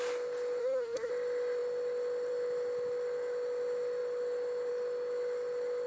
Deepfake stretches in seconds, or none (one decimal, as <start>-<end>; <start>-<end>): 0.6-1.1